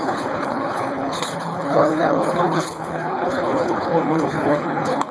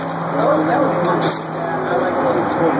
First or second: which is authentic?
second